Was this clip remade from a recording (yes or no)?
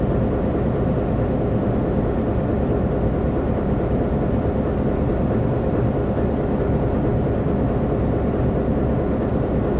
no